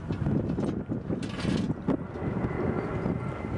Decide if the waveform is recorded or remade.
recorded